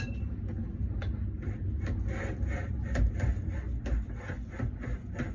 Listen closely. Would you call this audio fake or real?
real